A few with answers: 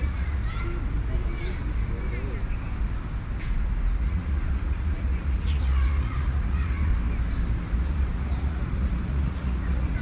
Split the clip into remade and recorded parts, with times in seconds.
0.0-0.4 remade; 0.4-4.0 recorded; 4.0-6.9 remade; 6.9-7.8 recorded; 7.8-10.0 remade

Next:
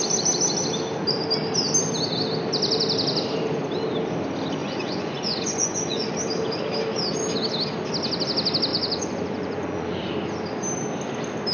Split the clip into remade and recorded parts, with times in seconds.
0.0-4.6 recorded; 4.6-6.1 remade; 6.1-8.7 recorded; 8.7-10.1 remade; 10.1-11.5 recorded

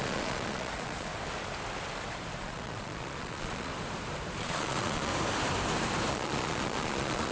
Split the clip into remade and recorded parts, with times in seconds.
0.0-1.1 remade; 1.1-2.4 recorded; 2.4-3.7 remade; 3.7-4.4 recorded; 4.4-5.1 remade; 5.1-6.1 recorded; 6.1-7.3 remade

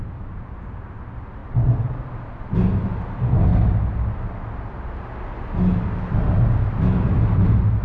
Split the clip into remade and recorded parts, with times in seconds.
0.0-7.8 recorded

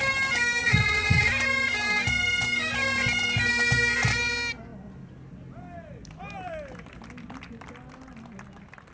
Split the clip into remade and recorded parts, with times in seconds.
0.0-0.6 recorded; 0.6-1.3 remade; 1.3-8.9 recorded

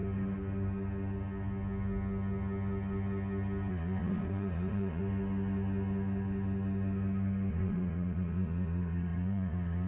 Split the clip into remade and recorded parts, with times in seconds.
0.0-3.7 recorded; 3.7-5.0 remade; 5.0-7.5 recorded; 7.5-9.9 remade

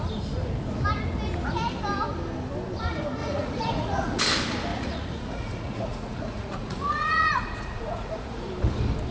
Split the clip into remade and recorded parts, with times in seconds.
0.0-3.2 recorded; 3.2-4.2 remade; 4.2-4.7 recorded; 4.7-8.5 remade; 8.5-9.1 recorded